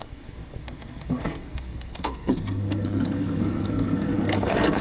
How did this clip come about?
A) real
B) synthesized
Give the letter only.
B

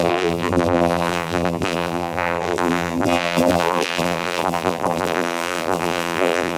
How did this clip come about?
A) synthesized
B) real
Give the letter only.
A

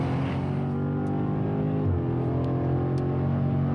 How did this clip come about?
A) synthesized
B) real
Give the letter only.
B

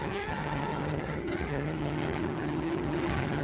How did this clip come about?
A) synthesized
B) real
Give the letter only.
A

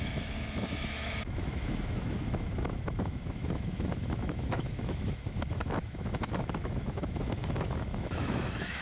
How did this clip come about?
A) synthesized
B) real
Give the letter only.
A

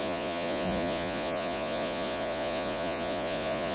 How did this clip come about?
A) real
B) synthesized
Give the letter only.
B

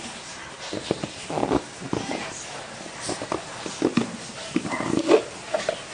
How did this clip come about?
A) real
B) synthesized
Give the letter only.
A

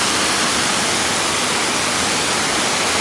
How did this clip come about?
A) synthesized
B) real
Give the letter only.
B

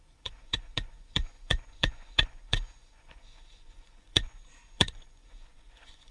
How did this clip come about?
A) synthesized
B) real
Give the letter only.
A